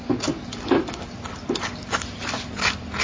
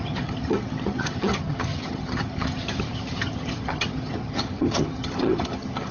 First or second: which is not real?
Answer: second